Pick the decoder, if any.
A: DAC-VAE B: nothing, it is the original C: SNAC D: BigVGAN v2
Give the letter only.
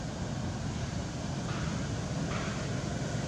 B